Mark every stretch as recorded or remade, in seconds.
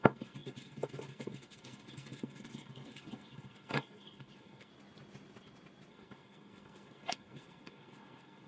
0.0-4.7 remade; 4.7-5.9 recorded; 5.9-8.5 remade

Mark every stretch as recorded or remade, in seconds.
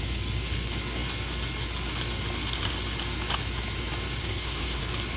0.0-4.2 recorded; 4.2-4.8 remade; 4.8-5.2 recorded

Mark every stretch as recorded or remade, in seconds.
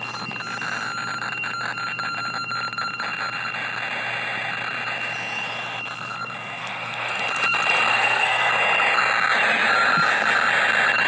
0.0-6.6 recorded; 6.6-7.2 remade; 7.2-7.9 recorded; 7.9-8.5 remade; 8.5-11.1 recorded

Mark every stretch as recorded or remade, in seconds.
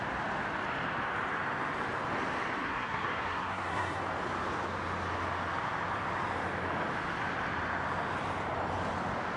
0.0-2.6 recorded; 2.6-4.0 remade; 4.0-9.4 recorded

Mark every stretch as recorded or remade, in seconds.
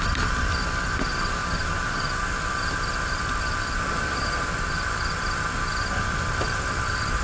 0.0-7.2 recorded